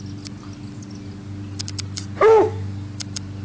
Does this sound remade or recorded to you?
recorded